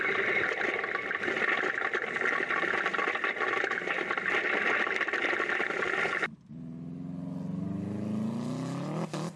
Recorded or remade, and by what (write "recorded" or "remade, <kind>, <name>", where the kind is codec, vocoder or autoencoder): recorded